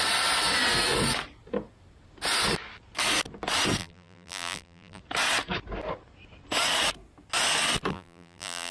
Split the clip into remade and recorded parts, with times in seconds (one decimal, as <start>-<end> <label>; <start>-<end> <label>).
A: 0.0-3.8 recorded; 3.8-5.0 remade; 5.0-7.9 recorded; 7.9-8.7 remade